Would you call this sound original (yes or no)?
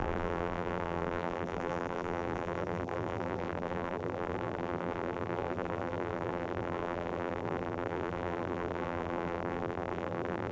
no